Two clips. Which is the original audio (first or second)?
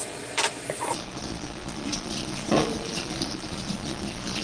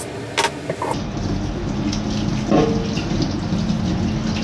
second